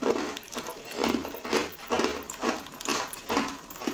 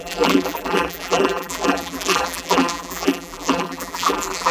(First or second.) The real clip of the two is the first